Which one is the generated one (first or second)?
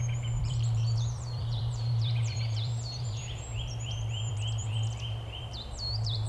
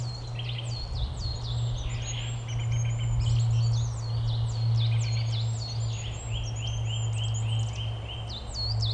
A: first